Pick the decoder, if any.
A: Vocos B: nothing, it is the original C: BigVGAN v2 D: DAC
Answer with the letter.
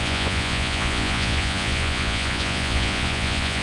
A